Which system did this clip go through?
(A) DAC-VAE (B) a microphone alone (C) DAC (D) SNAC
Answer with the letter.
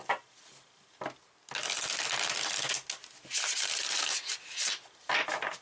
B